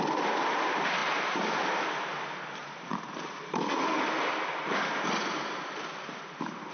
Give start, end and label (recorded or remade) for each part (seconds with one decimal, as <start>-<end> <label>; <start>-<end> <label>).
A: 0.0-6.7 recorded